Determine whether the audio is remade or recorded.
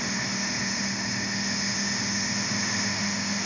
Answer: remade